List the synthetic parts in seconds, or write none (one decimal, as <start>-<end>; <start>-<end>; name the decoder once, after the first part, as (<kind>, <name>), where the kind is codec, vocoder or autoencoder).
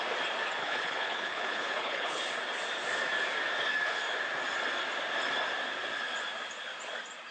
0.6-2.2 (codec, HILCodec)